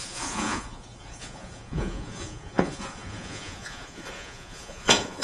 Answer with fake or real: fake